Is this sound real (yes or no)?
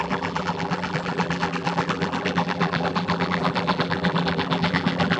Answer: no